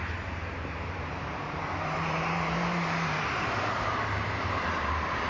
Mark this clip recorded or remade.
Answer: remade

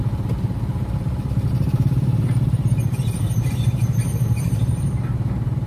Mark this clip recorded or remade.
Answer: remade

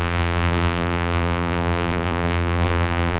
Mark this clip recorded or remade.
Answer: remade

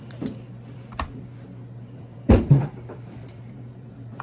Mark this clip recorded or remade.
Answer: remade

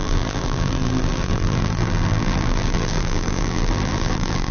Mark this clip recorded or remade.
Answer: remade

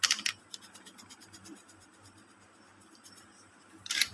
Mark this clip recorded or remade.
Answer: recorded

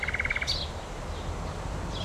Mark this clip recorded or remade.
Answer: recorded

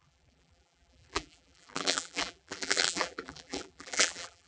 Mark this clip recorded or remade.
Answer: remade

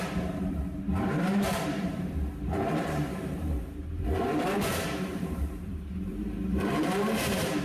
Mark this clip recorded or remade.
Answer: remade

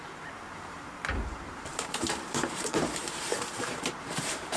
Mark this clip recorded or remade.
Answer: remade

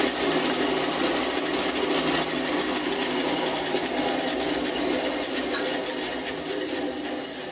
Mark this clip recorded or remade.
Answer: recorded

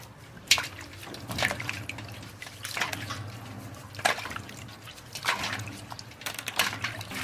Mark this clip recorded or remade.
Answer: recorded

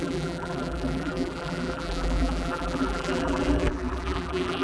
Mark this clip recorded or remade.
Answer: remade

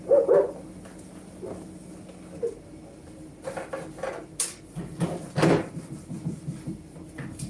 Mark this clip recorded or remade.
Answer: recorded